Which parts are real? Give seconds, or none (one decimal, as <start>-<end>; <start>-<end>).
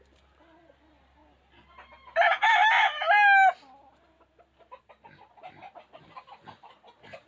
0.0-7.3